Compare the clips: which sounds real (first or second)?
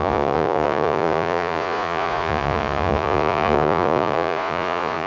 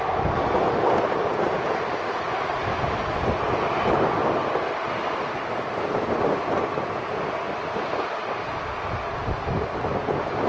second